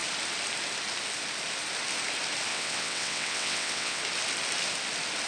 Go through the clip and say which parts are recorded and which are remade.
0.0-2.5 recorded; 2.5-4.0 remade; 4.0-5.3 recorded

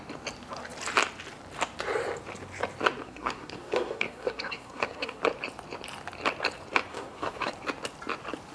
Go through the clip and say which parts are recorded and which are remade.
0.0-3.0 recorded; 3.0-5.2 remade; 5.2-6.9 recorded; 6.9-7.5 remade; 7.5-8.5 recorded

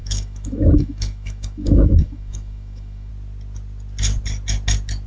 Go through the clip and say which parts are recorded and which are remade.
0.0-3.1 remade; 3.1-5.1 recorded